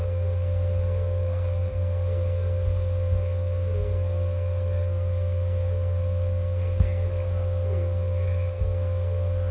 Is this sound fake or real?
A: fake